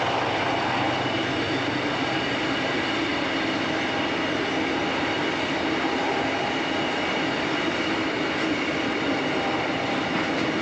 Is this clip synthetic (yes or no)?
no